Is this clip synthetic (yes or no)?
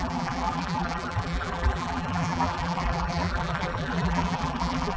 yes